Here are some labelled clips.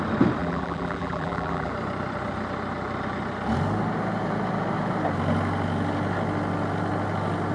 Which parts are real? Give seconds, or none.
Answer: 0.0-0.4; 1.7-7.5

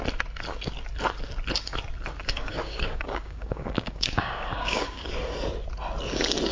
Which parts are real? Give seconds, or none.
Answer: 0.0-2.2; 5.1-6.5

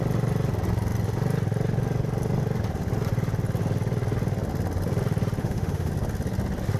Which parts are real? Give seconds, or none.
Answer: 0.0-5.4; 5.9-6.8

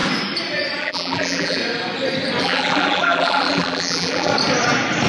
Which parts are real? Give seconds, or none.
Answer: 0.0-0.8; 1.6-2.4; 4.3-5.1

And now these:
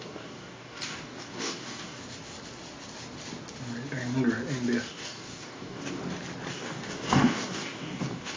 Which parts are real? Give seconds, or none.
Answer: 2.0-4.9; 6.0-6.5